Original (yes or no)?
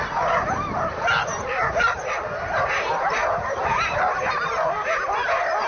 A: yes